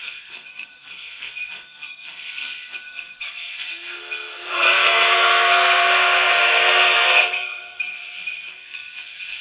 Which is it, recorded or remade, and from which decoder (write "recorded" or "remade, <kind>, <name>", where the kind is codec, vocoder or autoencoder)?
remade, codec, SNAC